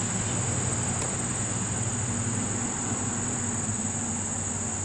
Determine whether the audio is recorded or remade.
recorded